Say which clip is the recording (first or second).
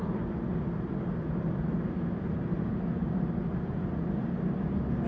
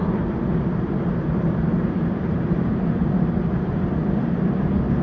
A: first